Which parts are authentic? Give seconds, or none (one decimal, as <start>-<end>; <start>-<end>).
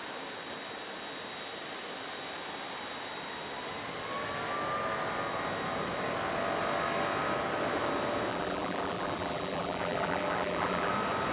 0.0-8.3; 10.9-11.3